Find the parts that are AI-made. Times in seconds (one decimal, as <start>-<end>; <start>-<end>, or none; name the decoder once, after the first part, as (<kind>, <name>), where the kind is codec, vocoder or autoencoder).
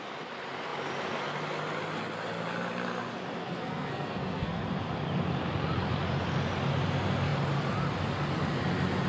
3.4-4.6 (codec, SNAC)